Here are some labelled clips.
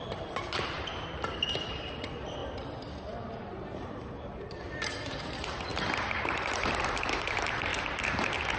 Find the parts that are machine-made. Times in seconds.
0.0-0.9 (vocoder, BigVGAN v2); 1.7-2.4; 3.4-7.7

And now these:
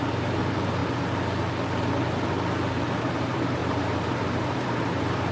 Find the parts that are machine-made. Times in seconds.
0.0-0.8 (vocoder, BigVGAN v2); 3.0-5.3

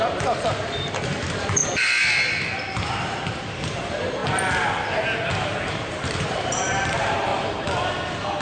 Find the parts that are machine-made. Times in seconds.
0.0-1.6 (vocoder, BigVGAN v2); 2.7-4.2; 5.7-7.3

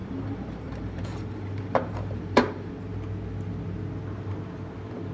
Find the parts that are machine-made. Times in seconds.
0.0-2.7 (vocoder, BigVGAN v2)